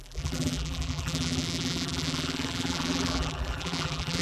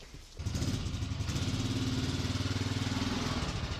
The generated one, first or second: first